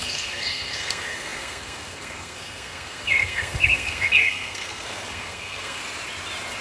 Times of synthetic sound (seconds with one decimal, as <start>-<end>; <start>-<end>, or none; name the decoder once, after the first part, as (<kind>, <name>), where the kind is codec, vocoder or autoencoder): 0.0-5.8 (codec, SNAC)